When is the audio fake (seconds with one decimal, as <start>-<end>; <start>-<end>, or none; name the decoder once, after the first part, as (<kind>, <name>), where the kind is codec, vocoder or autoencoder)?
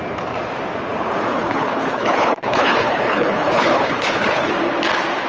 1.3-4.5 (codec, HILCodec)